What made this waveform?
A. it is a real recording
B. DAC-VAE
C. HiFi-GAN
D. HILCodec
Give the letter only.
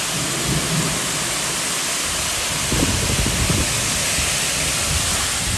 A